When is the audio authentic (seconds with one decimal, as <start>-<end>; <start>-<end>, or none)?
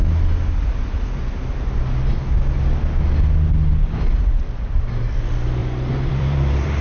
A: 0.0-5.6